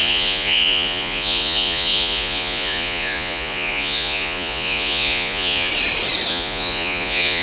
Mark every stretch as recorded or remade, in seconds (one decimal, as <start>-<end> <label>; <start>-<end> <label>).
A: 0.0-5.7 remade; 5.7-6.3 recorded; 6.3-7.4 remade